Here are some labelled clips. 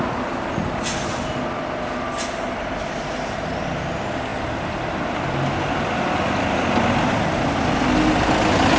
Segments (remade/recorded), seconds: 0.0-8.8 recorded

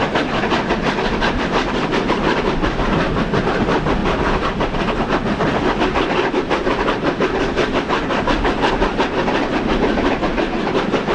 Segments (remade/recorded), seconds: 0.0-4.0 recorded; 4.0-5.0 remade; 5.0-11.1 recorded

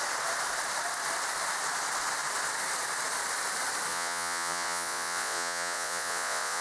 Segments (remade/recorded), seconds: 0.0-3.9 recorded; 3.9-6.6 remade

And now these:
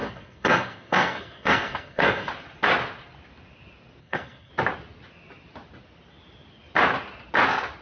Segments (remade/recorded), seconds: 0.0-2.3 remade; 2.3-4.0 recorded; 4.0-4.5 remade; 4.5-7.8 recorded

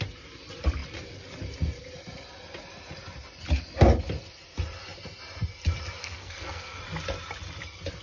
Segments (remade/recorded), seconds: 0.0-6.0 recorded; 6.0-6.8 remade; 6.8-8.0 recorded

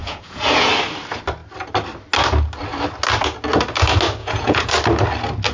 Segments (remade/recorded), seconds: 0.0-0.7 remade; 0.7-4.2 recorded; 4.2-4.7 remade; 4.7-5.5 recorded